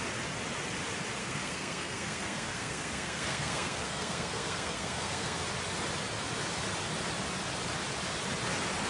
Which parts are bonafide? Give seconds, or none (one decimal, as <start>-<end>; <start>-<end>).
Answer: 0.0-1.2; 5.4-8.9